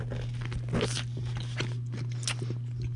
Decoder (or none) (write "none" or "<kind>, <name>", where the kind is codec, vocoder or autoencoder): none